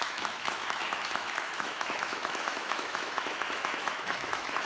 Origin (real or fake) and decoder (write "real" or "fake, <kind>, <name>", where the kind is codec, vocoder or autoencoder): fake, autoencoder, DAC-VAE